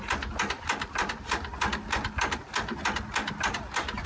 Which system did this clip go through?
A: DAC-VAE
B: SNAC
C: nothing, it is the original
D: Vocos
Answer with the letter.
C